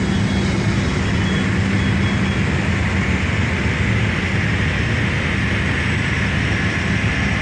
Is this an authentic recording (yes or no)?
yes